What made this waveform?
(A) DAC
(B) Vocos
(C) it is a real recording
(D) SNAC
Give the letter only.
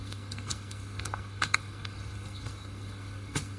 D